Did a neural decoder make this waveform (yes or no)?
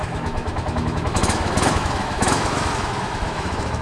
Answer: yes